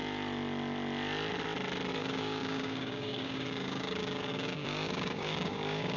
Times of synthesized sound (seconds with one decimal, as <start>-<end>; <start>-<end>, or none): 2.0-6.0